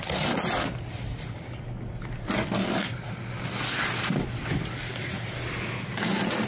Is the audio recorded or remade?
recorded